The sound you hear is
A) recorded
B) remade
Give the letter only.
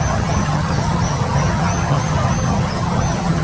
B